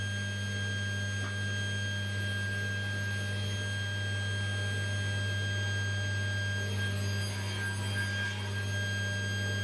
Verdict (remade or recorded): recorded